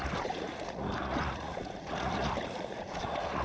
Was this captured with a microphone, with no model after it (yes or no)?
no